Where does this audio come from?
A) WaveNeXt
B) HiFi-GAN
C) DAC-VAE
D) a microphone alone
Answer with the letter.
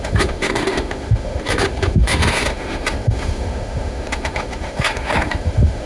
C